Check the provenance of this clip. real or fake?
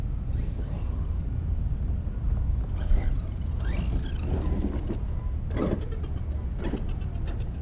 real